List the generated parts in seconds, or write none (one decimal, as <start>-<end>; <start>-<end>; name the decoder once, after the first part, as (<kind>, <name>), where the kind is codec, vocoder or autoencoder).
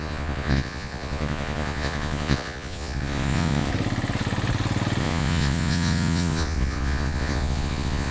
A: 0.0-3.7 (vocoder, Vocos); 5.0-8.1